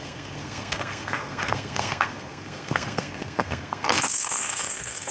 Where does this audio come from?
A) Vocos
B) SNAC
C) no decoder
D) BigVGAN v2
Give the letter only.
B